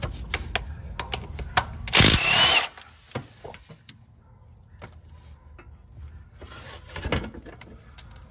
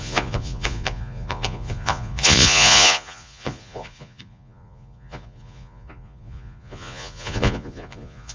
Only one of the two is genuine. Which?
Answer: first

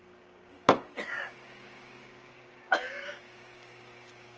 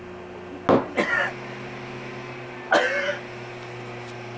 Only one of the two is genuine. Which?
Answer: second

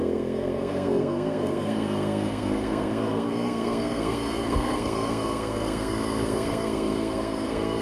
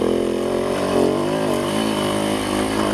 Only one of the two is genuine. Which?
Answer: second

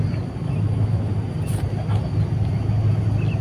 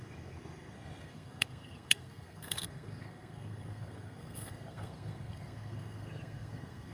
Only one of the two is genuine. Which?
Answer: first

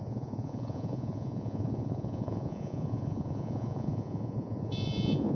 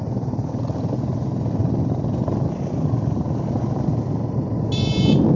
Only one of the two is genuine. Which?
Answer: second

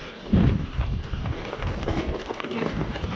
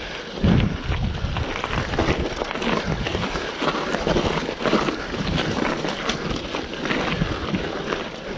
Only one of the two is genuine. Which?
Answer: second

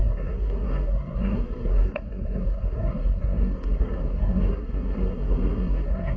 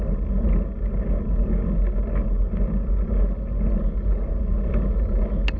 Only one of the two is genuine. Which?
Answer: second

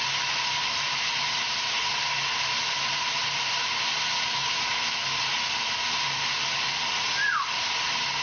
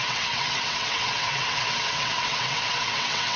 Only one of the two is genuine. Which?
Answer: first